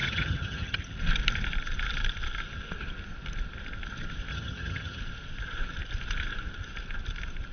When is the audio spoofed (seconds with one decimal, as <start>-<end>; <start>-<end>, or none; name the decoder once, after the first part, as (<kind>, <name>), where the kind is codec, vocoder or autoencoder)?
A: 0.0-0.8 (vocoder, HiFi-GAN); 4.3-5.0